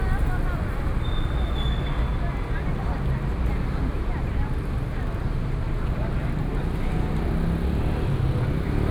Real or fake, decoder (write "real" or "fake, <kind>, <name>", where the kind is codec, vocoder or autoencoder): real